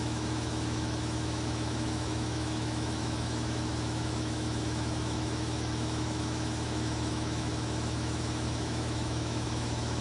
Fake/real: fake